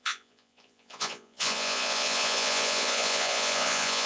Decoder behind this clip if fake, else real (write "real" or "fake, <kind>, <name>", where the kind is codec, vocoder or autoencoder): fake, vocoder, Vocos